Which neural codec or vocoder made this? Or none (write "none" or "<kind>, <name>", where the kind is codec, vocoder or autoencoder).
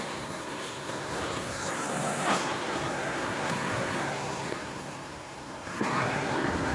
codec, SNAC